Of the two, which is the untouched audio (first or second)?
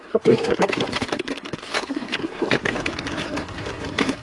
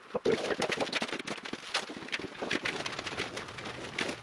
second